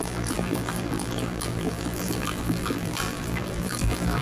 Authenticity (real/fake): fake